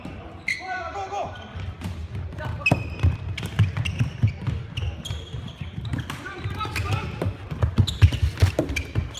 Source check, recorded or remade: recorded